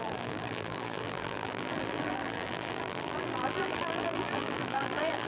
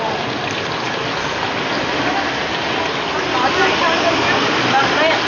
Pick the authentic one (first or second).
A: second